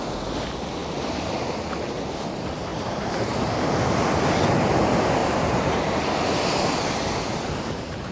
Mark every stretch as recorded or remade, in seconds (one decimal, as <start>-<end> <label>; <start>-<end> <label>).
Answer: 0.0-2.7 recorded; 2.7-3.5 remade; 3.5-5.2 recorded; 5.2-6.0 remade; 6.0-8.1 recorded